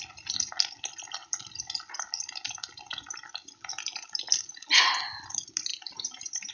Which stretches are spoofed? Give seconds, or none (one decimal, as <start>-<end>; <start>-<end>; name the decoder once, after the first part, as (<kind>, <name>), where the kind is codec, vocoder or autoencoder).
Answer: 5.7-6.5 (vocoder, BigVGAN v2)